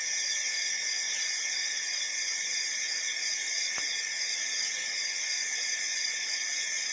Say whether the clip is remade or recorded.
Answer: remade